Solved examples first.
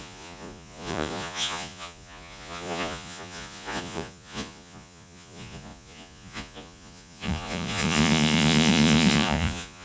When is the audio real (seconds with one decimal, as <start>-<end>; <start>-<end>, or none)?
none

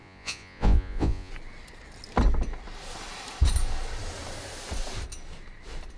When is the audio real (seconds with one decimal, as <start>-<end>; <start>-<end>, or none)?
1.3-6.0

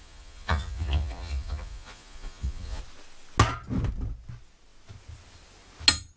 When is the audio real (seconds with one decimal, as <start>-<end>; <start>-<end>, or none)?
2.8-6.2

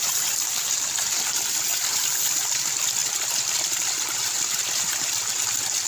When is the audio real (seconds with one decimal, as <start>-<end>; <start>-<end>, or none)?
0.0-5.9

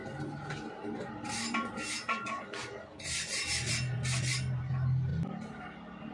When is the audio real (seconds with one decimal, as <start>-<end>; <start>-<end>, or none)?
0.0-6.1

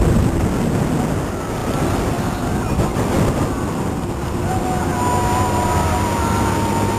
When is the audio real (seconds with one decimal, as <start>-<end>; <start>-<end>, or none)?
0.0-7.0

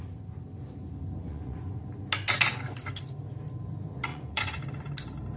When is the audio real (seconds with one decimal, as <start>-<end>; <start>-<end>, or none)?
0.0-1.3; 1.8-4.1; 4.6-5.4

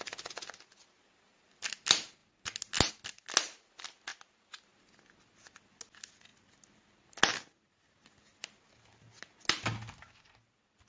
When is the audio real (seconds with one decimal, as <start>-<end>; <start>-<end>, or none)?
0.0-10.9